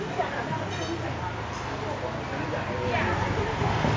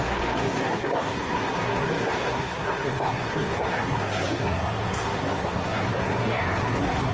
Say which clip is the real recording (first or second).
first